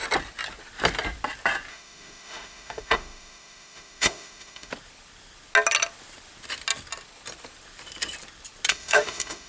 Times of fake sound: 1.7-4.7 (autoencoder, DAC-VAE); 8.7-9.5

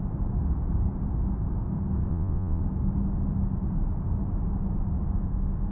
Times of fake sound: 2.1-2.6 (vocoder, Vocos)

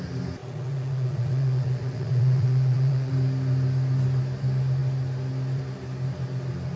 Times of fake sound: 0.4-3.1 (vocoder, Vocos)

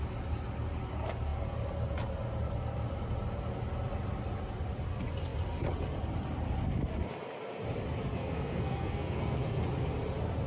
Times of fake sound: 8.1-9.6 (codec, SNAC)

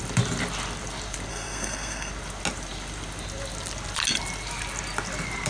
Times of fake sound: 1.3-2.1 (codec, SNAC)

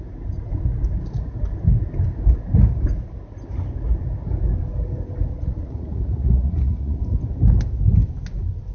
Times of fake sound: 5.3-7.0 (vocoder, Vocos)